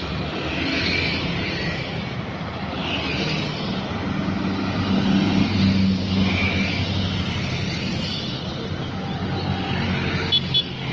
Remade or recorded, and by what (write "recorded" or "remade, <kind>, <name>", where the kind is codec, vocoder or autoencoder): recorded